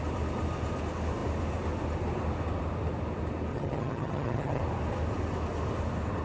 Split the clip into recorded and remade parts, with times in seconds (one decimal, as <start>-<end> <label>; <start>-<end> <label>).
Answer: 0.0-3.5 recorded; 3.5-4.6 remade; 4.6-6.2 recorded